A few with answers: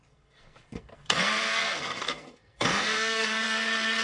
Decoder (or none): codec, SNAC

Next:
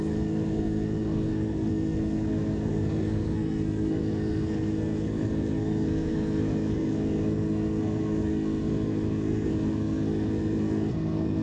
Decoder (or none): codec, SNAC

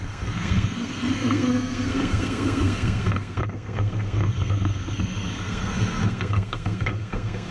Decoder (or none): codec, SNAC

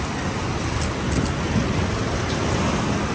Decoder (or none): none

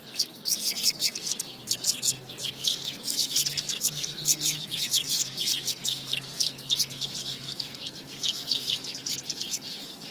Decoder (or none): codec, SNAC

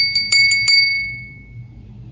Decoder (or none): none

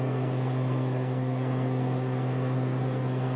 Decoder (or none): codec, SNAC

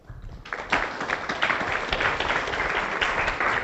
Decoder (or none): none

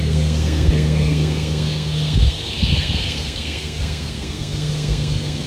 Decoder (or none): codec, SNAC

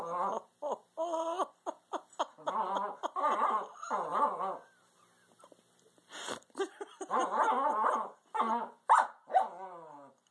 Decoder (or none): none